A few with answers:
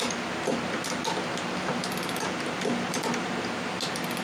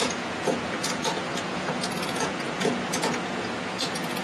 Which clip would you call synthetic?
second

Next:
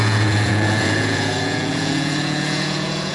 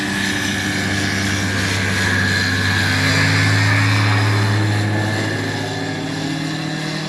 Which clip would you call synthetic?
first